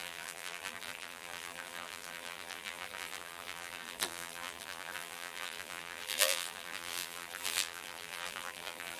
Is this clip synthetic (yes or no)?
yes